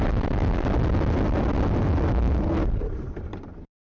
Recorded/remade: recorded